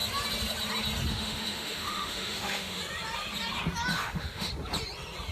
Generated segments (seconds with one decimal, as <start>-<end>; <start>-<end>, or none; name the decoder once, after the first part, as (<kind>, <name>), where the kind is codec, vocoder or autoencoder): 1.1-2.8 (autoencoder, DAC-VAE); 3.9-4.5